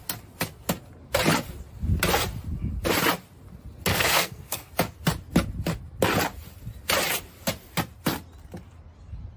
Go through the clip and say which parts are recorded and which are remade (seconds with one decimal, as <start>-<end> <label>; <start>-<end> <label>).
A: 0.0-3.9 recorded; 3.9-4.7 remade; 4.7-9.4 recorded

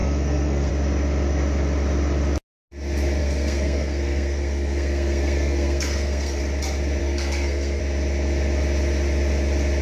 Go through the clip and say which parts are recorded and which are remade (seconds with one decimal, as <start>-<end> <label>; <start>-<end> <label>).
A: 0.0-0.7 remade; 0.7-3.2 recorded; 3.2-6.4 remade; 6.4-7.0 recorded; 7.0-7.8 remade; 7.8-9.8 recorded

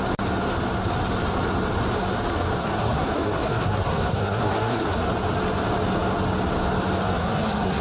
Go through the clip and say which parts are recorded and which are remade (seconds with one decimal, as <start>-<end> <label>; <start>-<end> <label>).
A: 0.0-2.6 recorded; 2.6-5.1 remade; 5.1-7.0 recorded; 7.0-7.8 remade